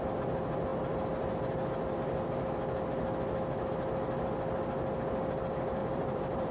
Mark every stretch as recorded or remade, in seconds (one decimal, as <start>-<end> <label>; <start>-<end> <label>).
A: 0.0-5.8 recorded; 5.8-6.5 remade